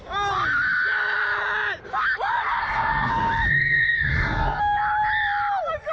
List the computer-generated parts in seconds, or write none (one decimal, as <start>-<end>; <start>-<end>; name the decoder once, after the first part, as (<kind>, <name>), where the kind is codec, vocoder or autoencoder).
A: 2.6-3.1 (codec, SNAC); 3.5-4.6